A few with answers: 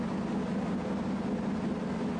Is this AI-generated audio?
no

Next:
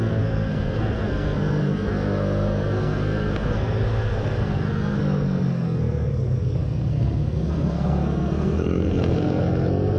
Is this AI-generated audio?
yes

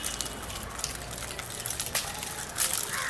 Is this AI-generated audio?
no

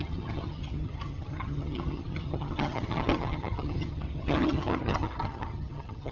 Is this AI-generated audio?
yes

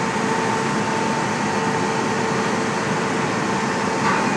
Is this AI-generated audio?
no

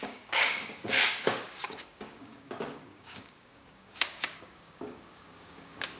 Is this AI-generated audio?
yes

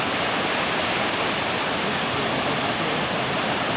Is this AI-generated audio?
no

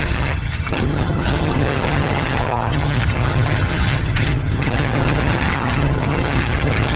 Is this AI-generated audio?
yes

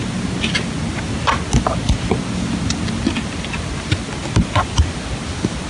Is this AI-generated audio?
no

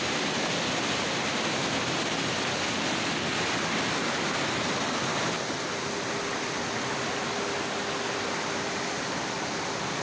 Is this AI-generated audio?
no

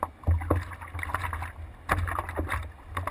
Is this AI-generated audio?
no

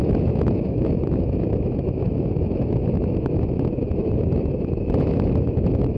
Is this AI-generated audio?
yes